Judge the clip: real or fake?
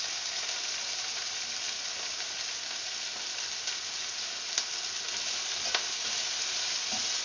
real